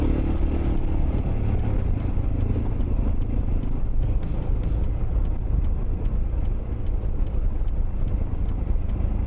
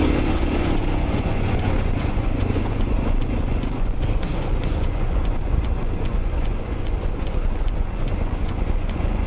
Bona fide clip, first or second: first